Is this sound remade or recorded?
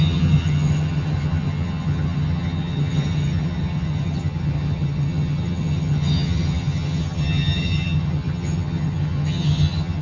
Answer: remade